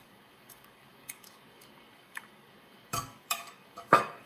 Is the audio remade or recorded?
remade